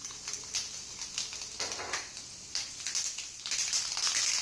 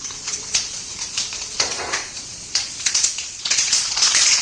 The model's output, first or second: second